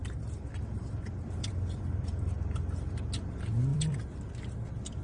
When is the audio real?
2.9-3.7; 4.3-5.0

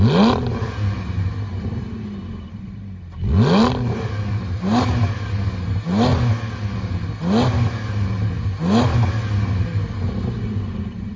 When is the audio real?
0.0-11.2

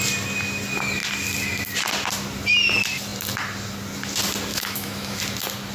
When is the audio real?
0.0-4.5; 5.2-5.7

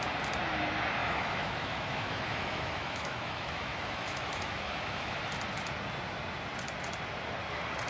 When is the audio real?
0.0-1.0; 5.2-7.9

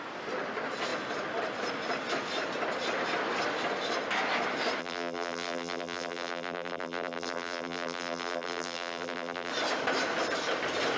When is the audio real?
0.0-4.8; 9.5-11.0

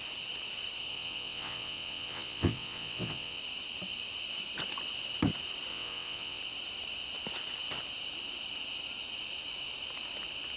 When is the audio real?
0.0-0.9; 3.4-5.7; 6.4-10.6

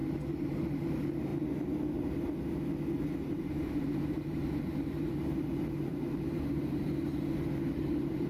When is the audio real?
1.3-3.0

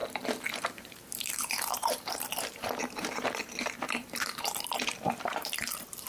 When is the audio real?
0.0-0.6